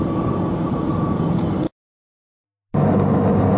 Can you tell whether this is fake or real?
real